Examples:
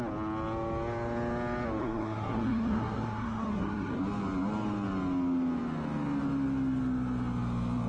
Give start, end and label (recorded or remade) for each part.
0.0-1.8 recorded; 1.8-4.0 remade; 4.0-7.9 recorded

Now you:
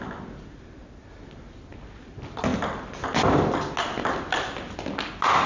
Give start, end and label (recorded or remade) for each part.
0.0-5.5 recorded

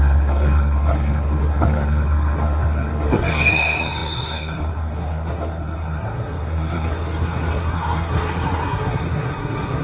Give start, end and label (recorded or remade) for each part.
0.0-9.8 remade